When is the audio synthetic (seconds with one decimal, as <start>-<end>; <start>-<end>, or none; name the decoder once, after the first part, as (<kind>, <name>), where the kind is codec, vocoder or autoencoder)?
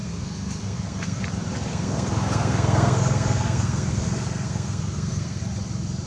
0.0-1.2 (codec, SNAC); 1.7-5.4